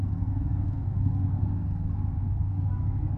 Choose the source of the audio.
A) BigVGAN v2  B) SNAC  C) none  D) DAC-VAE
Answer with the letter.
B